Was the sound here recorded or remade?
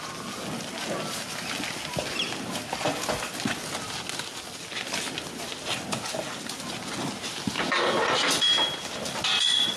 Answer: recorded